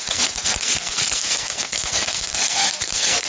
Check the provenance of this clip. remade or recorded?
remade